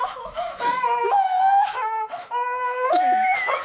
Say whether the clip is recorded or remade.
remade